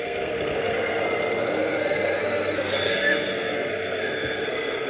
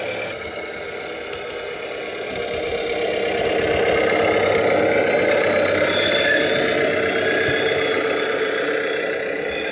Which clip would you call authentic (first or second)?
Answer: second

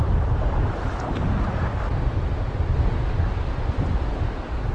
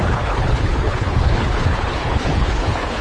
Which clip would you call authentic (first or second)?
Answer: first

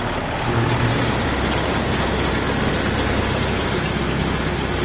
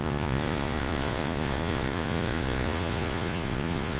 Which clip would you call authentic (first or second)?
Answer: first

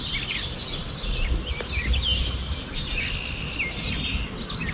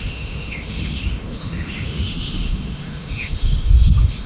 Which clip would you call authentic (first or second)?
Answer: first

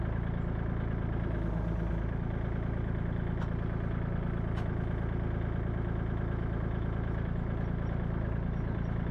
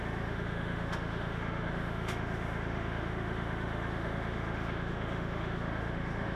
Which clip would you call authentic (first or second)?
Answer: first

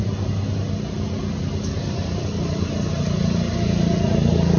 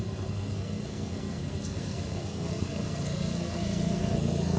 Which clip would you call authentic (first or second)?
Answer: first